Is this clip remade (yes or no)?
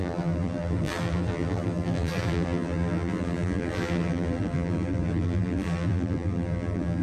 yes